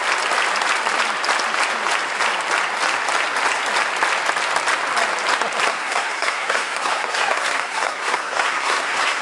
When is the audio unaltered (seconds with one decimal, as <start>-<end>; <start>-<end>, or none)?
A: 0.0-5.7